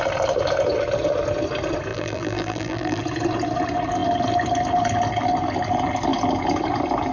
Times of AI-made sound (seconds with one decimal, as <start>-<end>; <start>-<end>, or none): 1.9-3.0